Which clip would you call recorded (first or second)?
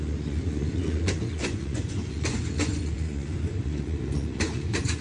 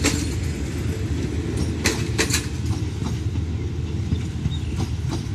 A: second